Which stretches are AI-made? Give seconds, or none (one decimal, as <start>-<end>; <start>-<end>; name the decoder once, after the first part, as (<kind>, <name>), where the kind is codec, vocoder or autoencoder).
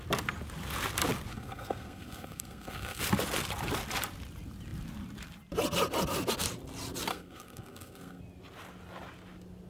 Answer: 1.3-3.0 (codec, SNAC); 7.1-8.2